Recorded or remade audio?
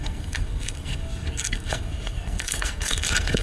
remade